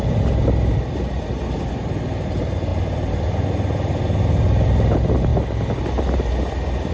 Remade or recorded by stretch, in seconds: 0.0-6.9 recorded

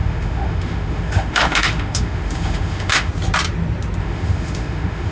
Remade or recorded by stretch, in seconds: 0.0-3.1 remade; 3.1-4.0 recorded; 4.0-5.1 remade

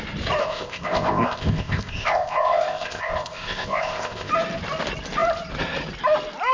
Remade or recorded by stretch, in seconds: 0.0-0.4 recorded; 0.4-4.3 remade; 4.3-6.5 recorded

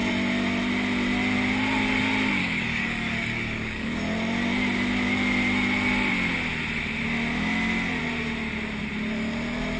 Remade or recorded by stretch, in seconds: 0.0-2.4 recorded; 2.4-4.0 remade; 4.0-9.8 recorded

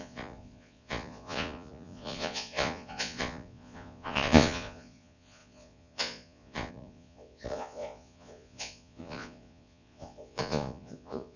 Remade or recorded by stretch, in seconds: 0.0-11.4 remade